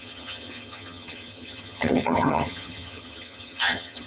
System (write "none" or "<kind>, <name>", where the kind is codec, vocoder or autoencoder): vocoder, HiFi-GAN